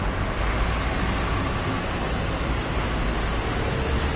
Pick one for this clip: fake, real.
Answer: real